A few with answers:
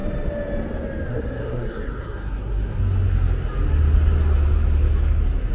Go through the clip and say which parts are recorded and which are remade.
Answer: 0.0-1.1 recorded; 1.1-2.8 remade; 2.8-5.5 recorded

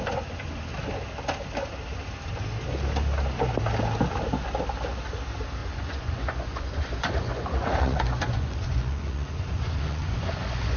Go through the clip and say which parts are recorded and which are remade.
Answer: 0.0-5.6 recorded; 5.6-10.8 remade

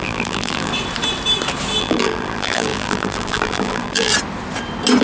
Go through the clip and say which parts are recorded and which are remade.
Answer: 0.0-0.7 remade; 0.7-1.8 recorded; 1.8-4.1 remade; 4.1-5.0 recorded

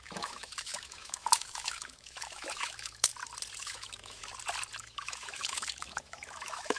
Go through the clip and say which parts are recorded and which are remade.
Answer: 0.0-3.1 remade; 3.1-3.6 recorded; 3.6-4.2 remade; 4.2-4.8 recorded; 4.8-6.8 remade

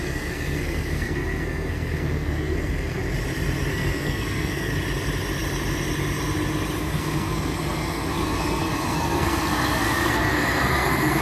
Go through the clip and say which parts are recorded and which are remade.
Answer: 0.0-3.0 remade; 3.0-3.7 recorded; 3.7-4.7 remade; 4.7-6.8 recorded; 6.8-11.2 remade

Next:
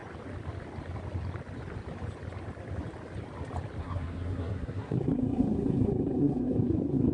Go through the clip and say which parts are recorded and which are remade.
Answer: 0.0-3.8 recorded; 3.8-7.1 remade